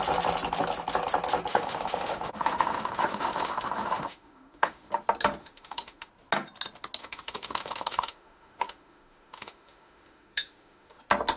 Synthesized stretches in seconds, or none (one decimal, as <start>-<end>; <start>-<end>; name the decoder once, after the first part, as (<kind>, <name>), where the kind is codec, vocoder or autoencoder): 1.5-4.9 (autoencoder, DAC-VAE); 5.4-6.1; 7.0-11.0